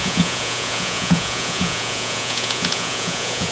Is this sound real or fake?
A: fake